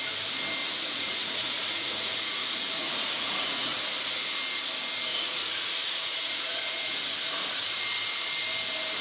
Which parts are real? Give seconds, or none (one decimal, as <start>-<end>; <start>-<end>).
0.0-0.6; 3.8-5.1; 7.8-9.0